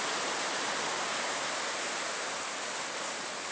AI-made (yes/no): no